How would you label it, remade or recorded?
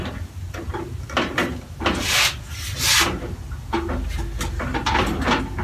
recorded